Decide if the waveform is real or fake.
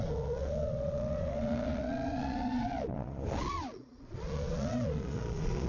fake